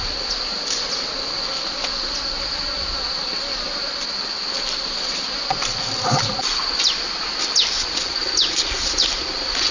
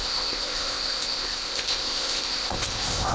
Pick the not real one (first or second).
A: second